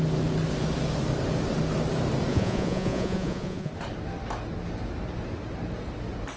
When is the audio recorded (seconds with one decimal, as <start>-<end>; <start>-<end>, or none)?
0.0-2.3; 3.7-6.4